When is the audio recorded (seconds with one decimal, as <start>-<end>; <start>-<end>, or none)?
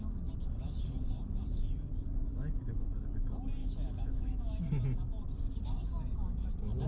0.0-3.6; 4.6-6.9